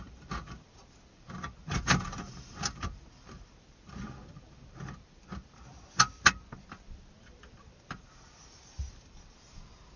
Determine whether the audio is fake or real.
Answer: fake